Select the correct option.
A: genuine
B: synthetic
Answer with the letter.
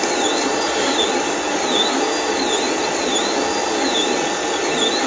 A